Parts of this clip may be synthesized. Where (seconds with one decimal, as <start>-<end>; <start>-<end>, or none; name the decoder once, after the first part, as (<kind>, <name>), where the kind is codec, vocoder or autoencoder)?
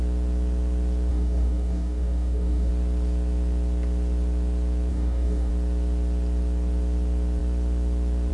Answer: 1.1-2.7 (codec, DAC); 4.9-5.5